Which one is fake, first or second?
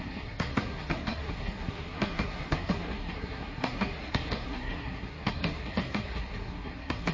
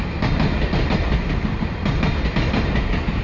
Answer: first